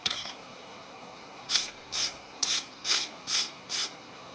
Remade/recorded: remade